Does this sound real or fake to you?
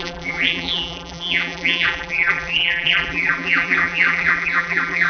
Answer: fake